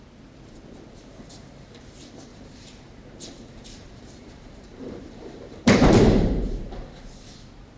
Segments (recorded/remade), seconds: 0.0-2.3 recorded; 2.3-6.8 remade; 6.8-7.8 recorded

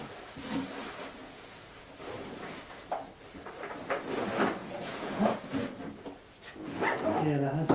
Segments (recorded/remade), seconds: 0.0-1.2 recorded; 1.2-1.7 remade; 1.7-4.6 recorded; 4.6-5.4 remade; 5.4-7.7 recorded

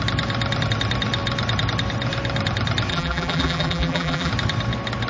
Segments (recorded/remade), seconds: 0.0-2.9 recorded; 2.9-4.3 remade; 4.3-5.1 recorded

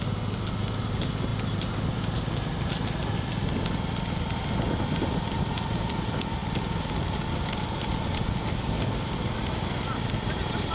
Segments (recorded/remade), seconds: 0.0-6.4 recorded; 6.4-10.7 remade

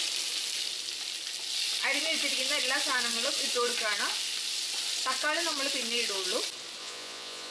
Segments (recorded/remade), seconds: 0.0-6.8 recorded; 6.8-7.5 remade